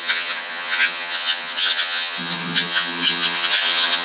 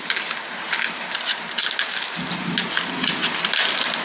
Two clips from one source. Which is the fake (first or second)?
first